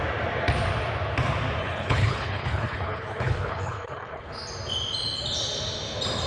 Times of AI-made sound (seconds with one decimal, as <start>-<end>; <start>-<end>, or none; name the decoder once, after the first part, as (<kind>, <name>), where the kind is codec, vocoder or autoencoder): 1.6-4.3 (codec, HILCodec)